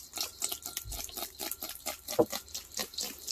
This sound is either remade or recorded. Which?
recorded